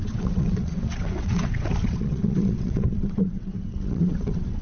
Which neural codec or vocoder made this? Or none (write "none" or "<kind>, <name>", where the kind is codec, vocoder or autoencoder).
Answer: vocoder, WaveNeXt